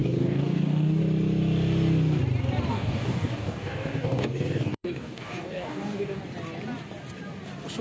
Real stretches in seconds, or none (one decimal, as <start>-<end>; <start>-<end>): 1.0-2.7; 6.2-7.8